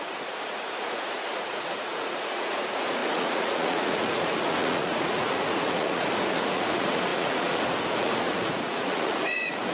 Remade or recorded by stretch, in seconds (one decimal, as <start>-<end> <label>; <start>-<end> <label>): 0.0-9.7 remade